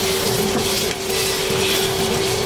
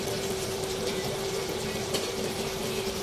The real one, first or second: first